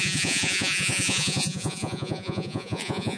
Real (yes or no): no